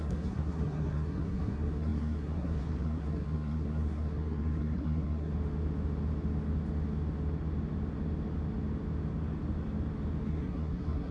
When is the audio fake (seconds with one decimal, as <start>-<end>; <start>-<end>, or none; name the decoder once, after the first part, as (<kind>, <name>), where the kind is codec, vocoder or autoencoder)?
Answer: 0.0-5.3 (codec, SNAC); 10.3-11.1